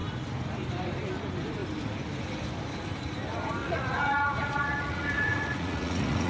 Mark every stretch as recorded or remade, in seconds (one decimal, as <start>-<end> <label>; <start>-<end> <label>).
0.0-3.6 recorded; 3.6-6.3 remade